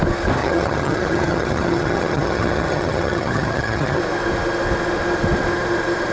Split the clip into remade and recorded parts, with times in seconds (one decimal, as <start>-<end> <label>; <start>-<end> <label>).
0.0-0.4 recorded; 0.4-4.0 remade; 4.0-6.1 recorded